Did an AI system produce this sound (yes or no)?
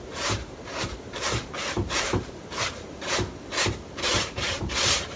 yes